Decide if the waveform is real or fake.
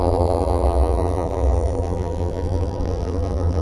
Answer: fake